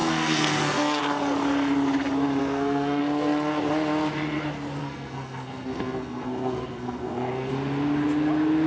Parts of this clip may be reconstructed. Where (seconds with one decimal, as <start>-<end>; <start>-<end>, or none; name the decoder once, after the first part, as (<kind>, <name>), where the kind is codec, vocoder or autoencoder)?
0.0-1.0 (codec, SNAC); 2.4-3.0; 4.8-7.5